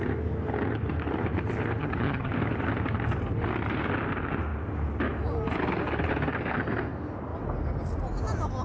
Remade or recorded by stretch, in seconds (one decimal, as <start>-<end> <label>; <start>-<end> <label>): 0.0-1.8 recorded; 1.8-2.3 remade; 2.3-8.6 recorded